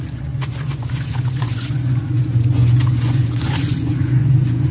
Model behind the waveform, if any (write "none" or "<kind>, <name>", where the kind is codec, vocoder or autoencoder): vocoder, Vocos